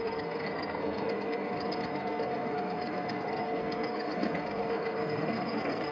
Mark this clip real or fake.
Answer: fake